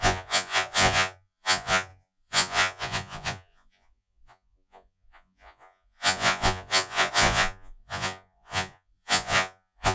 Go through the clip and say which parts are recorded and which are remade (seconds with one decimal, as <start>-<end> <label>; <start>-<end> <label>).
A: 0.0-9.9 remade